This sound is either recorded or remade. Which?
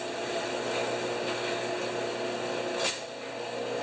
recorded